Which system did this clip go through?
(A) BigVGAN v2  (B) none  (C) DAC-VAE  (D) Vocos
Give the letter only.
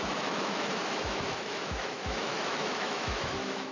C